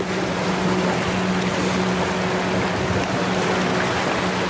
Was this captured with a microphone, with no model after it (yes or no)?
yes